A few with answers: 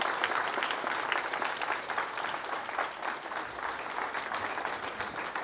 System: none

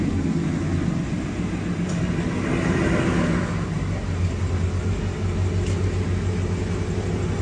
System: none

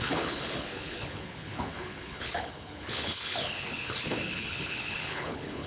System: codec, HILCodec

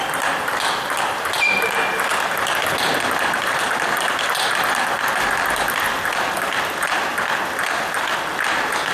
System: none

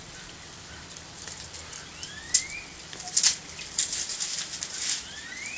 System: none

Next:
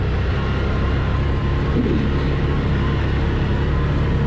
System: none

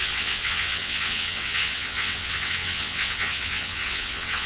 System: vocoder, WaveNeXt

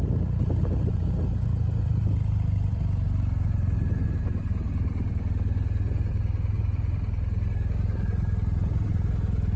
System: none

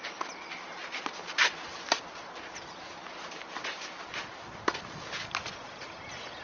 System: none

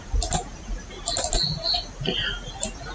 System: none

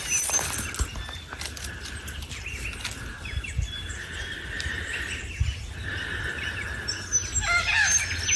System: none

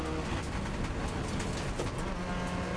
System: none